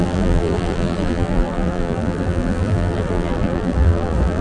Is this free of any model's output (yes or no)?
no